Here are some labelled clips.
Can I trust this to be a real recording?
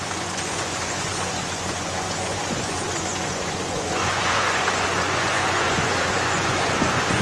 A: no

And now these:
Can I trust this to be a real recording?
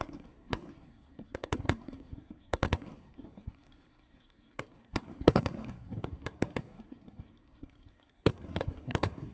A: no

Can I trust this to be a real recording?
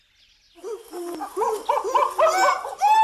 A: yes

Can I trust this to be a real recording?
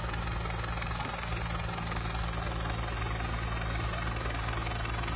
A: yes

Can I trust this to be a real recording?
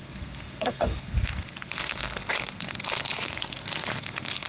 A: no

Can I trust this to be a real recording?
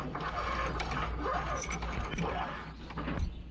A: yes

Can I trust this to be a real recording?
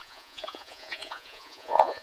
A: no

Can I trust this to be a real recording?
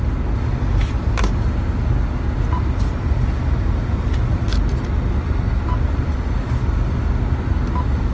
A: yes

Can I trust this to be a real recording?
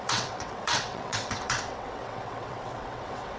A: no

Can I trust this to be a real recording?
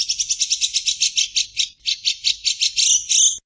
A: yes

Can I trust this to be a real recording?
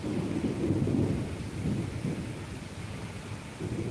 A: no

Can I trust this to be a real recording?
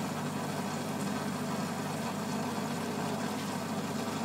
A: yes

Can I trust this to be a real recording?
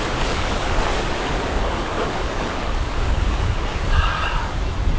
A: no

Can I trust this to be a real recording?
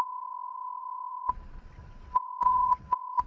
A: no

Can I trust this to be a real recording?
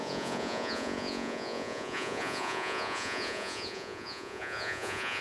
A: no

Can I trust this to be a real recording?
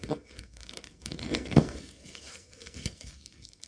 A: no